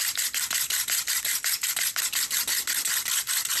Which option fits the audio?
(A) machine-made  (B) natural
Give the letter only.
B